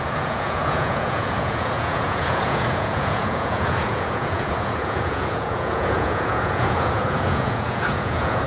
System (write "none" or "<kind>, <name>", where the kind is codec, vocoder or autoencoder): vocoder, Vocos